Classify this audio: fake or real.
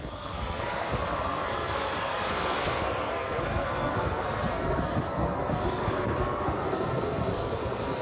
fake